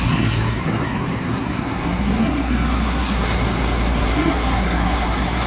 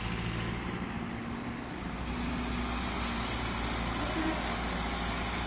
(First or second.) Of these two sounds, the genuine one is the second